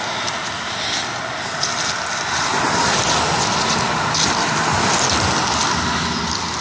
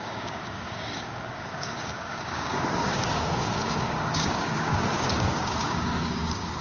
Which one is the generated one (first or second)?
second